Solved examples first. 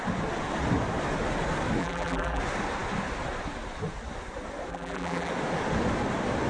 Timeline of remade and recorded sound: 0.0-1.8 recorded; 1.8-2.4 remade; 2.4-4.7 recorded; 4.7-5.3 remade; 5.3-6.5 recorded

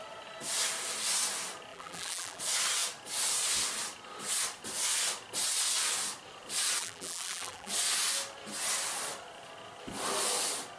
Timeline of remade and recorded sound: 0.0-1.7 recorded; 1.7-2.4 remade; 2.4-6.8 recorded; 6.8-7.7 remade; 7.7-10.8 recorded